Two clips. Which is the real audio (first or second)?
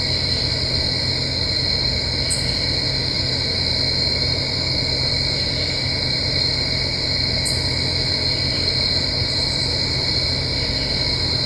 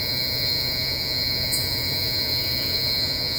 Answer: first